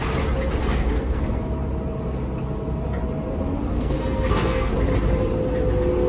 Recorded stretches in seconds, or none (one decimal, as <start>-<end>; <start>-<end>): 0.0-0.6; 1.4-3.7; 4.7-6.1